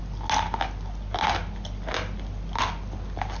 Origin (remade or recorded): recorded